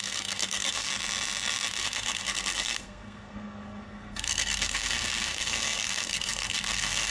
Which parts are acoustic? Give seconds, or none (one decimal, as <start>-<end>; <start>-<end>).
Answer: 0.9-1.8